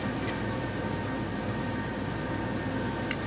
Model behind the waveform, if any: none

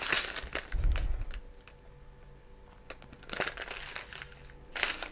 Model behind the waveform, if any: none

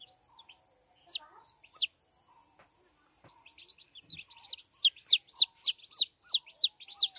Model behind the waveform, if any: none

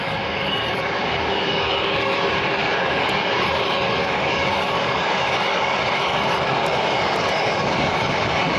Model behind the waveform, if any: codec, DAC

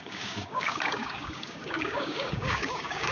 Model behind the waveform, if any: codec, DAC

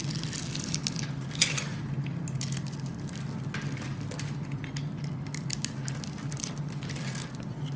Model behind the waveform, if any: none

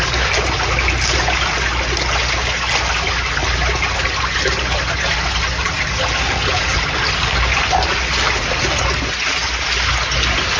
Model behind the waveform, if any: none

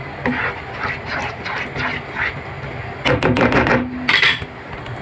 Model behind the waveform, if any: none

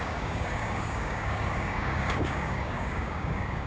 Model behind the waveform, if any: codec, DAC